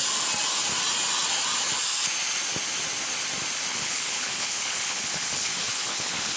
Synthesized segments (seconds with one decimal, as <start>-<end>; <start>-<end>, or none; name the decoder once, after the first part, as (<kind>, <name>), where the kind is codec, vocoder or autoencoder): 3.7-6.4 (codec, HILCodec)